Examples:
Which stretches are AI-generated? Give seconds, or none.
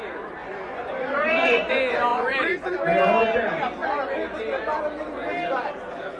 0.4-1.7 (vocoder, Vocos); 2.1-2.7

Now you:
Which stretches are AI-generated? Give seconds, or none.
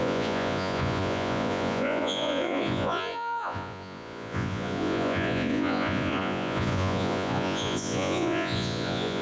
0.0-9.2 (vocoder, Vocos)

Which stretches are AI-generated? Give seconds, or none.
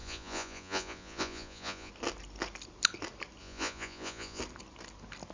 0.0-1.9 (vocoder, Vocos); 3.4-4.4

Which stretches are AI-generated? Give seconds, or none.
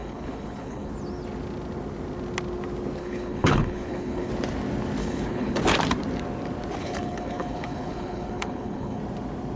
0.0-0.9 (codec, HILCodec); 3.0-4.3; 5.0-5.6; 6.8-9.0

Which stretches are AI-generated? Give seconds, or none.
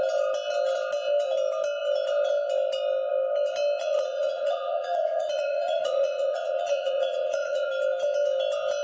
3.8-7.7 (vocoder, Vocos)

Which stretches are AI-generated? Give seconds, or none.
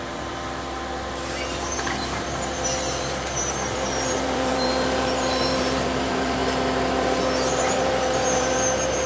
0.0-6.4 (vocoder, BigVGAN v2); 7.5-9.1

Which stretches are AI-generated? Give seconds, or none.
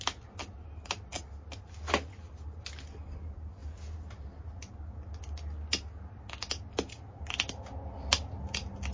none